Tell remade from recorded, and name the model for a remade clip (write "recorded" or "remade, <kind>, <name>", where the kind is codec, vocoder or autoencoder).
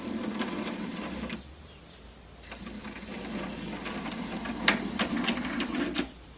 recorded